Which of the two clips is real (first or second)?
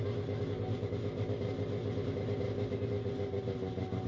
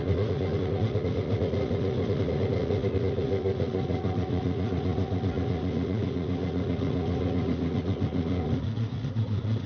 first